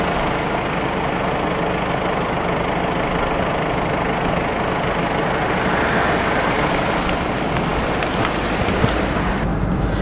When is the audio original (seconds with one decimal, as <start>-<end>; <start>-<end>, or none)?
0.0-10.0